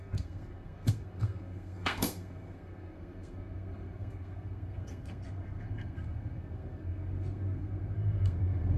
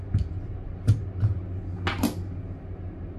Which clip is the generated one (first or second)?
first